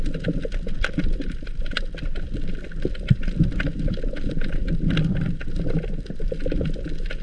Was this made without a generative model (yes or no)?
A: no